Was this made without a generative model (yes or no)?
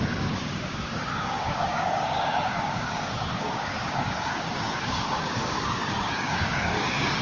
no